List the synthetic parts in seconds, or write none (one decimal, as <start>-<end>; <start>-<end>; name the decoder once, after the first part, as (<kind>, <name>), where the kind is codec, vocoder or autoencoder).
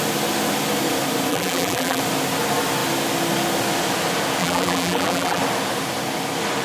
1.3-2.0 (vocoder, BigVGAN v2); 4.4-5.4